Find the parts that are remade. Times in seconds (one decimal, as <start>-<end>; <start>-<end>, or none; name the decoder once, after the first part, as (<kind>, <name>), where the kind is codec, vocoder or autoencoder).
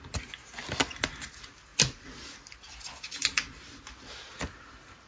none